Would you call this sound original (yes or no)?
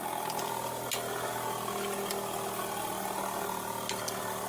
yes